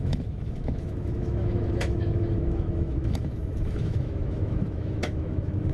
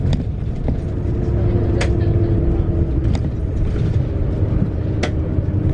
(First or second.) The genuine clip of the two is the second